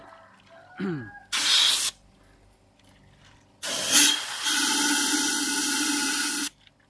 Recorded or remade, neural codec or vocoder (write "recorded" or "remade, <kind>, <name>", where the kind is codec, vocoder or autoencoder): recorded